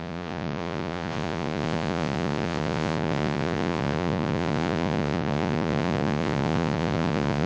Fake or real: fake